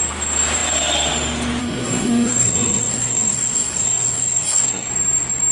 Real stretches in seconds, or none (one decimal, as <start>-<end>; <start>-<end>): 0.0-1.6; 4.9-5.5